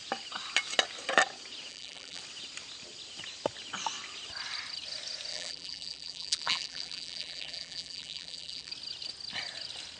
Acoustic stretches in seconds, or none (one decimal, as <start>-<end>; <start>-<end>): 0.0-1.7; 2.2-5.3; 8.7-10.0